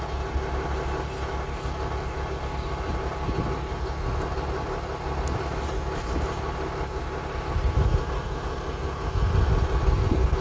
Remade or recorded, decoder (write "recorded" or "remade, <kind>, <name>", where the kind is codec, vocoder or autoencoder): recorded